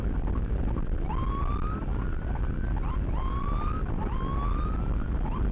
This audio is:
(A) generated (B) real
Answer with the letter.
B